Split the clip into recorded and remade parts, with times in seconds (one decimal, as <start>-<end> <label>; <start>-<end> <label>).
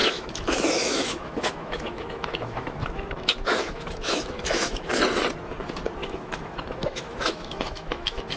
0.0-5.0 remade; 5.0-6.0 recorded; 6.0-8.4 remade